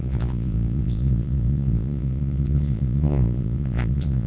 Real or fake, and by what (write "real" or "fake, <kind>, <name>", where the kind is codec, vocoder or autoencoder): fake, vocoder, Vocos